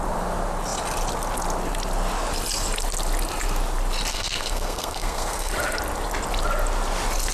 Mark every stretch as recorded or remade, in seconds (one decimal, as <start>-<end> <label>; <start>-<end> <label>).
0.0-4.1 recorded; 4.1-5.5 remade; 5.5-7.3 recorded